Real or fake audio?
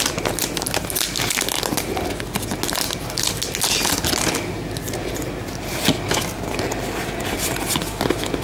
real